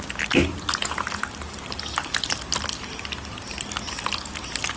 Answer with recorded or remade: recorded